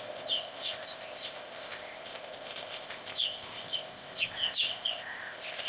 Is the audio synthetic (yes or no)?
yes